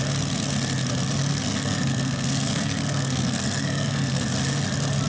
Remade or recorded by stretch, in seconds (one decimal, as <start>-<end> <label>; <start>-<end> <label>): 0.0-1.2 recorded; 1.2-4.3 remade; 4.3-5.1 recorded